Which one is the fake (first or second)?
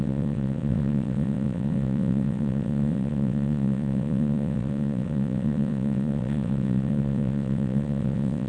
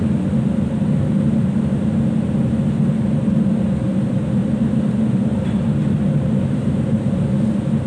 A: first